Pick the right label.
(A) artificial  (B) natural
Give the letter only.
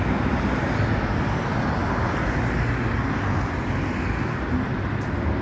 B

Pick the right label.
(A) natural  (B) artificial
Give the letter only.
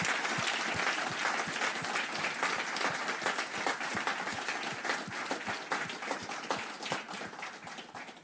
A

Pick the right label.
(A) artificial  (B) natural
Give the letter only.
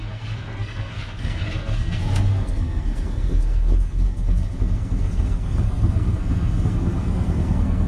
A